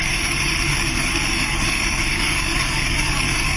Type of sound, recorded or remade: remade